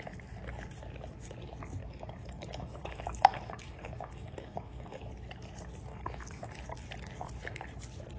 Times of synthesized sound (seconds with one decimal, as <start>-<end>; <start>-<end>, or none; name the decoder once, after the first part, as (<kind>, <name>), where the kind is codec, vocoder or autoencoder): 1.8-5.1 (codec, DAC); 5.9-6.5